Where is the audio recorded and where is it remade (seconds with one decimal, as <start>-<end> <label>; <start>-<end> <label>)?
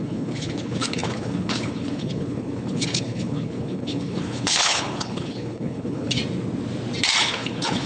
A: 0.0-6.2 remade; 6.2-7.2 recorded; 7.2-7.9 remade